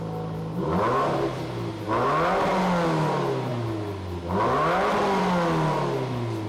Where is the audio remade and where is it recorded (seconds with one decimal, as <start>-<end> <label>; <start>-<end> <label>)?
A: 0.0-6.5 recorded